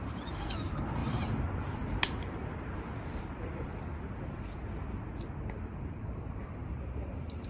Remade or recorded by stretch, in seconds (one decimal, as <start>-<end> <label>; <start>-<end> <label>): 0.0-3.7 remade; 3.7-5.7 recorded; 5.7-7.5 remade